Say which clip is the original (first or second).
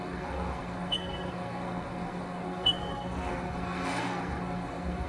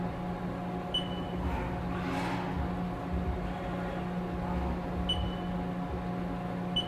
second